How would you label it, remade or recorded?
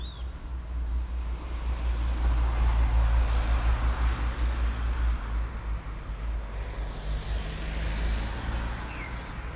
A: recorded